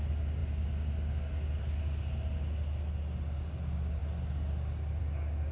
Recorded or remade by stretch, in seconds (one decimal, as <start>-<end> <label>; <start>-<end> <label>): 0.0-5.5 recorded